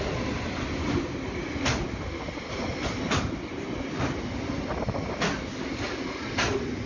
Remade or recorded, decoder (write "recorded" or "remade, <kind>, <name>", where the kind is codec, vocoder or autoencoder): recorded